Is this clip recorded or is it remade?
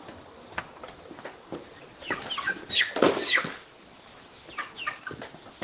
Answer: recorded